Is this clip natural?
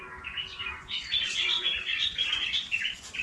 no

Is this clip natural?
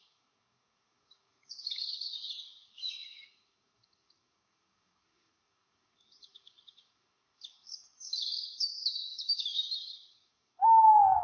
no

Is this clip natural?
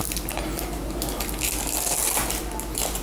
yes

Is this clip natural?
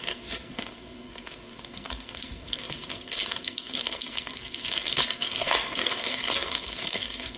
no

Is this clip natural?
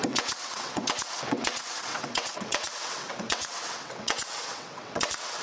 no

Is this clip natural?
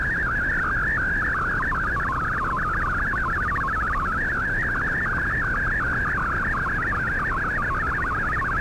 yes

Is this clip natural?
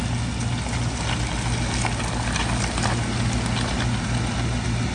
yes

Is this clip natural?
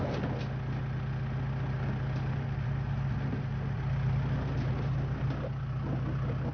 yes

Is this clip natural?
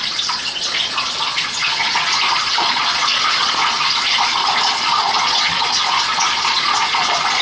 no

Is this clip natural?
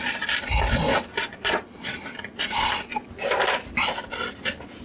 yes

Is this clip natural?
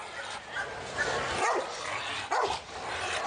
yes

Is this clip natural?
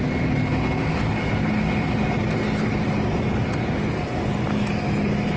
yes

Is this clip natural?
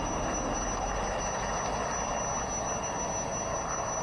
yes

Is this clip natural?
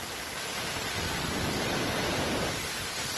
yes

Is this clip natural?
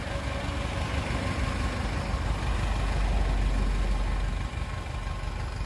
yes